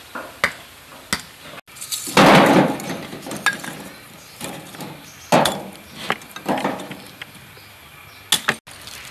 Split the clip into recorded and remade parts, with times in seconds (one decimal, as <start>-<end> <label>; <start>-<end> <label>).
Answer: 0.0-9.1 recorded